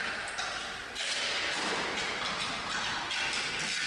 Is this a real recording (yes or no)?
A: yes